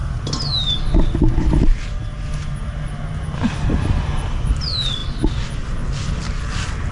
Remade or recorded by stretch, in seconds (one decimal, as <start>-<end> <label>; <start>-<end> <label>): 0.0-6.9 recorded